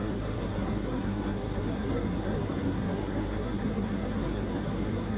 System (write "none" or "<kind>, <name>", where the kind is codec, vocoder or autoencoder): codec, SNAC